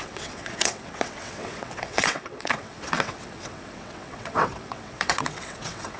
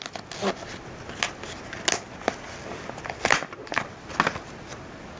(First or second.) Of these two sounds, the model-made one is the first